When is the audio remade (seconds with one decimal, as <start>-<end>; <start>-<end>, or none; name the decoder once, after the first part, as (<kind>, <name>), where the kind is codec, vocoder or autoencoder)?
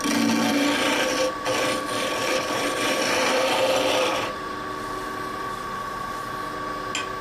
0.5-1.4 (vocoder, BigVGAN v2); 2.2-6.1